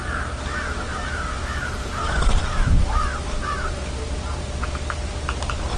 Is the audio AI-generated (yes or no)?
yes